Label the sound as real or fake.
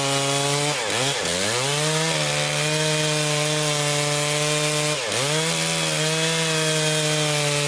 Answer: real